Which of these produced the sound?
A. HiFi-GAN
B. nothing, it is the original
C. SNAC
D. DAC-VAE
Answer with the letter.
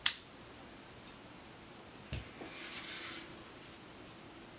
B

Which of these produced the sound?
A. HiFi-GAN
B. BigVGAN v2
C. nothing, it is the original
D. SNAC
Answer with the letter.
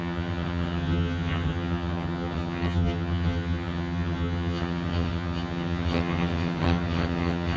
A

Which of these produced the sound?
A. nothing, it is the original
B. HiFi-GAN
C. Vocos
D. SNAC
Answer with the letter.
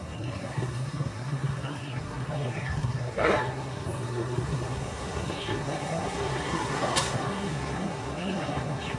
D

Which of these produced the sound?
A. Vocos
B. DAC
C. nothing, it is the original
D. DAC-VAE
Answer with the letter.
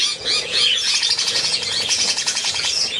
A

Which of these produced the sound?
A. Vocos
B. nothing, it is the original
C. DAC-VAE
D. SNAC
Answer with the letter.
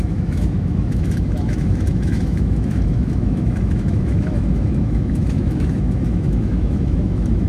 C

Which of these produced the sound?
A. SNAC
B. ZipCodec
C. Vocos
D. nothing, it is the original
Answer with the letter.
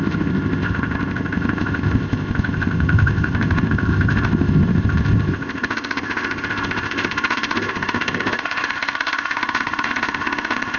B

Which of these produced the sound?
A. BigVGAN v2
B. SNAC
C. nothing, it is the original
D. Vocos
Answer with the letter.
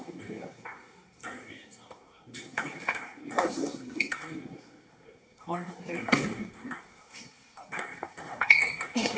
B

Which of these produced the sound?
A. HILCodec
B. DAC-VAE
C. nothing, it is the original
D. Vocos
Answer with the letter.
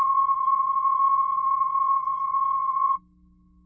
A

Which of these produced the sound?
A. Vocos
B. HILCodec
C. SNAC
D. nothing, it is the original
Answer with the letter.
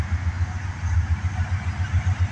D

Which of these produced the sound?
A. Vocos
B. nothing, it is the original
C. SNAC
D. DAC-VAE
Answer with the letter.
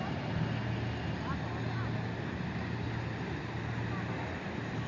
B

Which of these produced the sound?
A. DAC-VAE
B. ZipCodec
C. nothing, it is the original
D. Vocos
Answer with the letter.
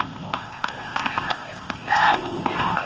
B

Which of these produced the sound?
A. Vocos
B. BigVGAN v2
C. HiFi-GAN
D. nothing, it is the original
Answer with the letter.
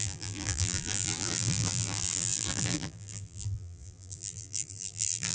B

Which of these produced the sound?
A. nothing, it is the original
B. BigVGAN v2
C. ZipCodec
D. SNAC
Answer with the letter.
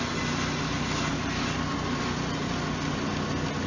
A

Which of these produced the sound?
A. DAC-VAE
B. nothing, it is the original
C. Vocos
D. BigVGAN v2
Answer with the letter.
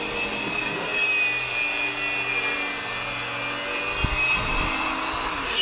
B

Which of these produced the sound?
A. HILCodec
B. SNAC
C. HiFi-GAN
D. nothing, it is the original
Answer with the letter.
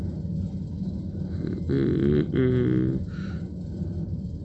D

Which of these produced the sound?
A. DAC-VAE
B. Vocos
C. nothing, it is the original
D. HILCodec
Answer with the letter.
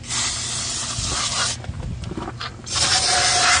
C